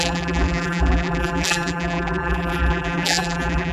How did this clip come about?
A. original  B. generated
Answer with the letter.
B